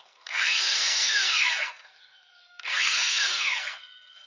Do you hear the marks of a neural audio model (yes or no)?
yes